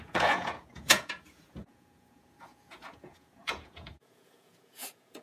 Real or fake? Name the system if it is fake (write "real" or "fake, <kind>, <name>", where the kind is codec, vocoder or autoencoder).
fake, vocoder, Vocos